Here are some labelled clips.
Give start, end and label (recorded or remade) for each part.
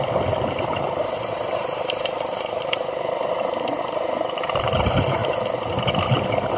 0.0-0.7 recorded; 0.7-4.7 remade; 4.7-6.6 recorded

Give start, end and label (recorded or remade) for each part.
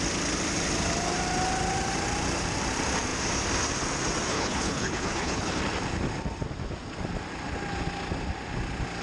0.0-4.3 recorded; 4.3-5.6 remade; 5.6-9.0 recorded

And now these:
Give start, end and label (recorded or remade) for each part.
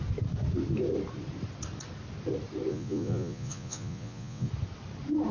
0.0-2.7 recorded; 2.7-4.5 remade; 4.5-5.3 recorded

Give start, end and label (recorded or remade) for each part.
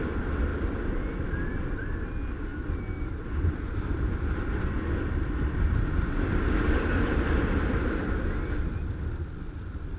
0.0-10.0 recorded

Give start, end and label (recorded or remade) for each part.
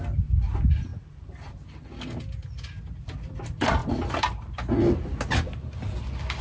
0.0-6.4 recorded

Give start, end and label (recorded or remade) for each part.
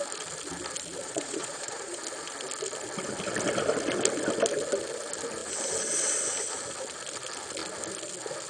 0.0-1.0 recorded; 1.0-2.0 remade; 2.0-8.5 recorded